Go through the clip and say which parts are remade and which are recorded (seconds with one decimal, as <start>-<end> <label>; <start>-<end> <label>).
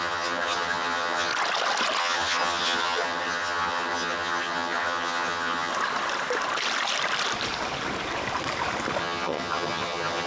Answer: 0.0-1.3 remade; 1.3-2.0 recorded; 2.0-5.7 remade; 5.7-9.0 recorded; 9.0-10.3 remade